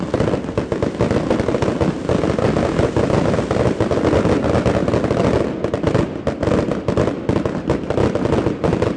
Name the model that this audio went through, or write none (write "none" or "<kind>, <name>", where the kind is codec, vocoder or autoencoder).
none